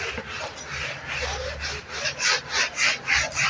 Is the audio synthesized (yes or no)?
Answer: no